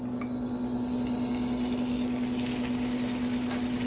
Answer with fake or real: real